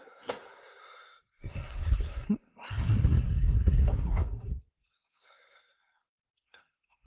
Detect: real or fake fake